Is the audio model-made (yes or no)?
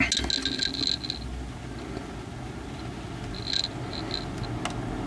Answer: no